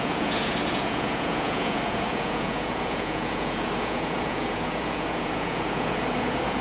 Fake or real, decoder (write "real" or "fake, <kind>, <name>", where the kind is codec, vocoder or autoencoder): fake, vocoder, Vocos